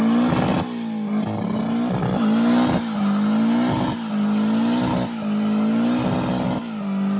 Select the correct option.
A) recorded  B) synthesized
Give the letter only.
A